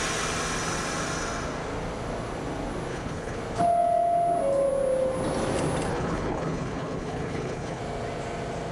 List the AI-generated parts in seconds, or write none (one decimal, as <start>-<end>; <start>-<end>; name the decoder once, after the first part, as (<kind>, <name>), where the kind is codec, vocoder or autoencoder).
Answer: 2.9-3.4 (codec, HILCodec); 5.9-7.8